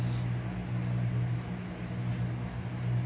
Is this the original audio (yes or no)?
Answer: yes